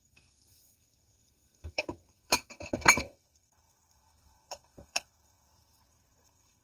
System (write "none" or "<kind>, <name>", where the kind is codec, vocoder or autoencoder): codec, SNAC